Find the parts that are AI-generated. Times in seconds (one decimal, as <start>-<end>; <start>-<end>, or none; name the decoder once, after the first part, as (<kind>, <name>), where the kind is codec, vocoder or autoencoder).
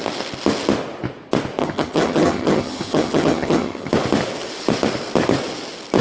1.6-3.9 (vocoder, HiFi-GAN)